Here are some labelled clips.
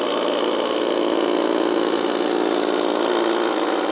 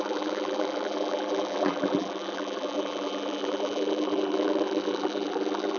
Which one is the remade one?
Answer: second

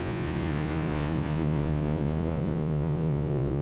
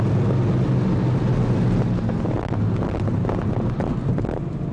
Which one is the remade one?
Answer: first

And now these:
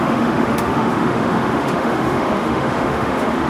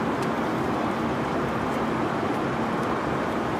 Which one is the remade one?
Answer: first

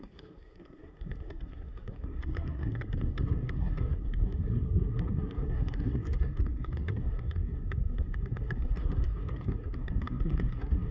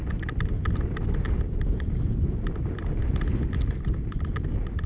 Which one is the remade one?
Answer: first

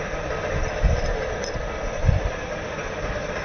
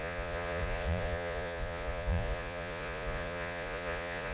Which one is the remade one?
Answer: second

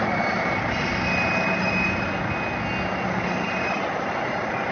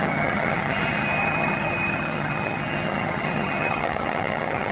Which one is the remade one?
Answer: second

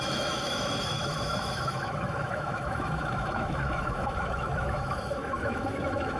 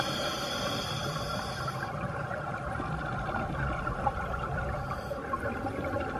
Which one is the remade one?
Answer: first